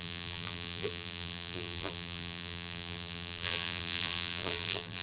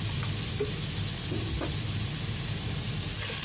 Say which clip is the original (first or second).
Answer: second